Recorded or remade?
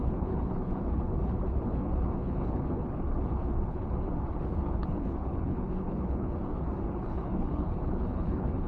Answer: remade